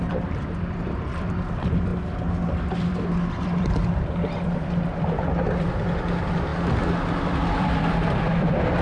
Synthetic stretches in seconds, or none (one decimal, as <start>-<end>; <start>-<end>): 0.0-1.9; 2.5-6.5; 7.1-8.8